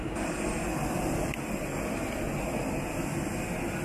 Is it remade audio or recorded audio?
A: recorded